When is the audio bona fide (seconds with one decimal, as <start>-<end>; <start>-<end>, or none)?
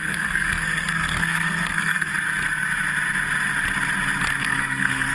2.1-4.4